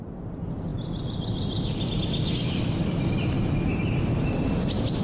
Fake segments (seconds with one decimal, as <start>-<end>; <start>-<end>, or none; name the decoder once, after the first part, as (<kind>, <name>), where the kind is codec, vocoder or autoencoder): none

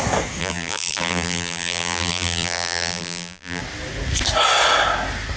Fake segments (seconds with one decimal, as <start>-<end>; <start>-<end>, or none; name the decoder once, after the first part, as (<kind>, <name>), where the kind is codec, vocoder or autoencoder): 0.4-3.6 (vocoder, BigVGAN v2)

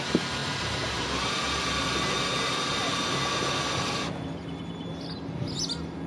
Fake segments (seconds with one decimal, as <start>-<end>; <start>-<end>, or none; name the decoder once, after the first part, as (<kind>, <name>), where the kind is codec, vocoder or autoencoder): 0.4-1.3 (vocoder, BigVGAN v2)

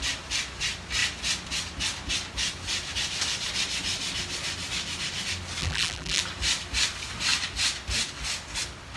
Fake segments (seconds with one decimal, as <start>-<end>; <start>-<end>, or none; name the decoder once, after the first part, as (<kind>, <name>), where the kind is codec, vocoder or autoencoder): 5.6-6.2 (vocoder, BigVGAN v2)

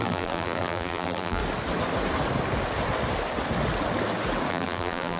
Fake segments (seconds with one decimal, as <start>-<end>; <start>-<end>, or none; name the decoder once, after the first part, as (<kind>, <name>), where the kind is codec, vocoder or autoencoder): 0.0-1.4 (vocoder, BigVGAN v2); 4.5-5.2

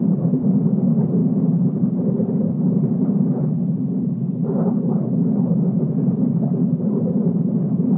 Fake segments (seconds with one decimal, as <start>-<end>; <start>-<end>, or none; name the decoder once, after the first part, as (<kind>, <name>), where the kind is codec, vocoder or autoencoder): 0.0-8.0 (vocoder, BigVGAN v2)

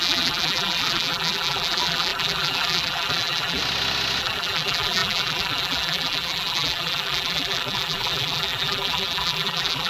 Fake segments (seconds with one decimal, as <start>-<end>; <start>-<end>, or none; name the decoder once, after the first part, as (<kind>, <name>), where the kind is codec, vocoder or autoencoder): 0.0-3.6 (vocoder, BigVGAN v2); 4.2-9.9

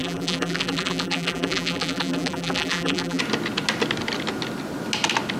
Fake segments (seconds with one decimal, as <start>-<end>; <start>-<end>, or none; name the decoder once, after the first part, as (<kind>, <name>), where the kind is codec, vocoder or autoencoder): 0.0-3.2 (vocoder, BigVGAN v2)